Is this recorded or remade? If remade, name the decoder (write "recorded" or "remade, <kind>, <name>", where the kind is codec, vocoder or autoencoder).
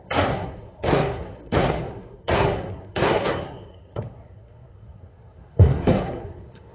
remade, codec, SNAC